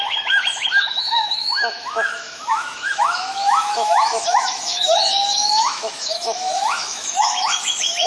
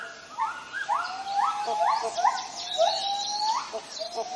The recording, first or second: second